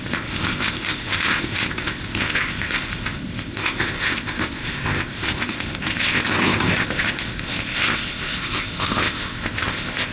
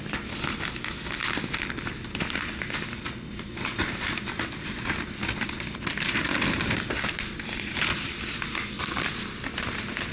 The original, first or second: second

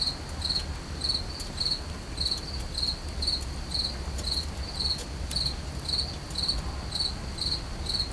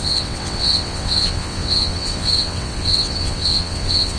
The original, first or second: first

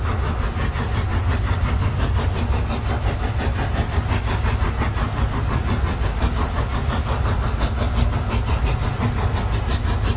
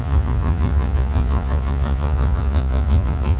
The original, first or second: first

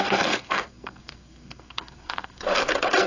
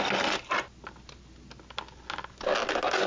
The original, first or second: second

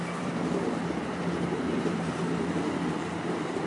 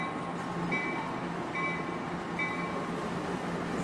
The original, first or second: second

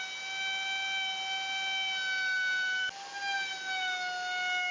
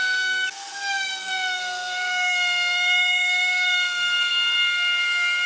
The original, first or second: first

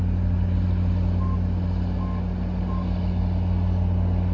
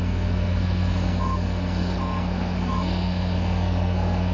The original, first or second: first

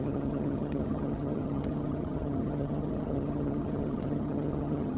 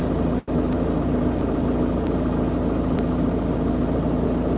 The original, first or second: second